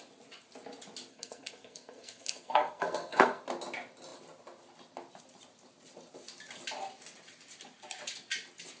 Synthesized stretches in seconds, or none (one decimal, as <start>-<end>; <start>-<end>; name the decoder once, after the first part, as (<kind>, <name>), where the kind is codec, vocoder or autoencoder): 1.1-3.4 (codec, SNAC)